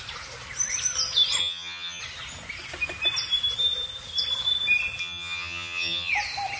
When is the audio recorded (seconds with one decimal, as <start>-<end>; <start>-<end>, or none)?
0.0-1.4; 2.0-5.0; 6.1-6.6